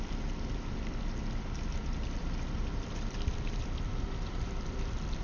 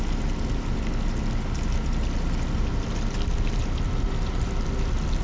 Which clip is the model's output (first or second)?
first